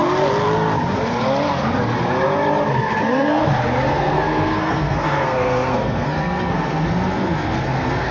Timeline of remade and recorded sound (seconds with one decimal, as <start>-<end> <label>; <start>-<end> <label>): 0.0-2.7 recorded; 2.7-3.4 remade; 3.4-3.9 recorded; 3.9-8.1 remade